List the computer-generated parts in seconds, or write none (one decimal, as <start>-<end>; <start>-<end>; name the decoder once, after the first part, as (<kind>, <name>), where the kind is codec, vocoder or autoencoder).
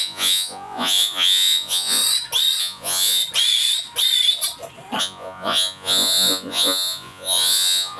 0.0-2.0 (vocoder, Vocos); 2.6-3.2; 5.0-8.0